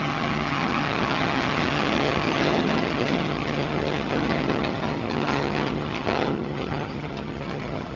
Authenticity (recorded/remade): remade